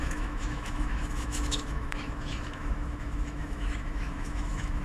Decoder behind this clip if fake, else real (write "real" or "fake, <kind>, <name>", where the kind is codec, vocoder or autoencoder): fake, autoencoder, DAC-VAE